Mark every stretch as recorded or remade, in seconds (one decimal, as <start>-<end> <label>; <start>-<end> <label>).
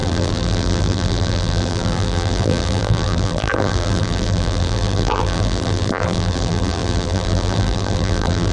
0.0-8.5 remade